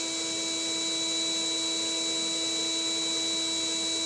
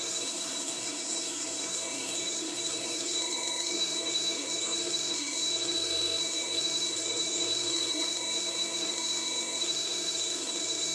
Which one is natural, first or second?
first